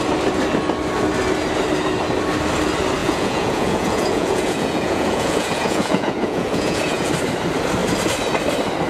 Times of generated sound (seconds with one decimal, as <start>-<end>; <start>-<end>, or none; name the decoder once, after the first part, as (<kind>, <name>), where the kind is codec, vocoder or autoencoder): 3.0-7.1 (vocoder, Vocos)